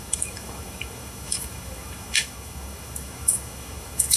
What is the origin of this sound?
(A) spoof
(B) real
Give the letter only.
A